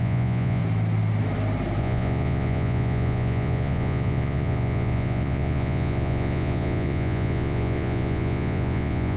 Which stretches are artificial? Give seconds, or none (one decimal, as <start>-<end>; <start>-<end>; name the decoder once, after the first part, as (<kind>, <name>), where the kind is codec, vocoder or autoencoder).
0.0-0.6 (vocoder, Vocos); 1.8-9.2